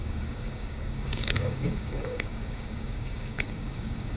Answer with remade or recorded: remade